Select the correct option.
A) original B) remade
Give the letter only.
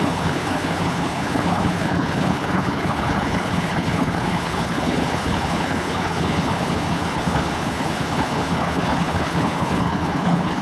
B